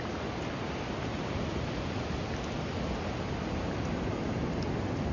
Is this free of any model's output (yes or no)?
yes